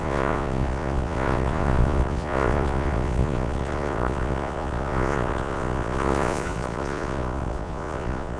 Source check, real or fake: fake